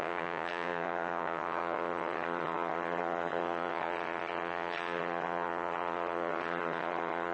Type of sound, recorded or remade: remade